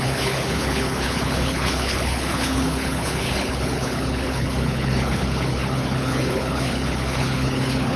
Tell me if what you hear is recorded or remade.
remade